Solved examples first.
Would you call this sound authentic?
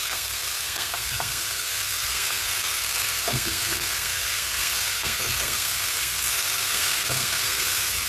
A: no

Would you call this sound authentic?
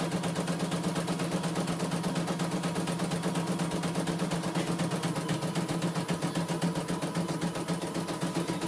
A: yes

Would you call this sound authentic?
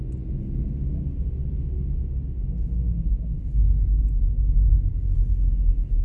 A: yes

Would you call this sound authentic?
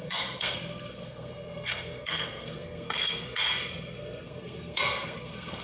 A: no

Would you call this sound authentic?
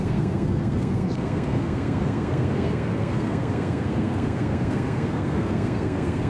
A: no